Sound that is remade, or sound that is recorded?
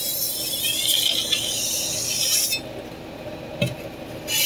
recorded